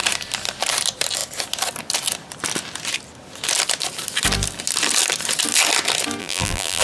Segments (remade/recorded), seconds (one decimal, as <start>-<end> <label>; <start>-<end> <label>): 0.0-6.2 recorded; 6.2-6.8 remade